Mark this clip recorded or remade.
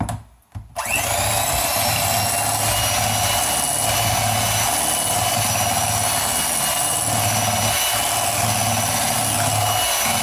recorded